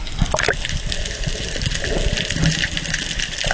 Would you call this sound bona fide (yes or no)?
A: yes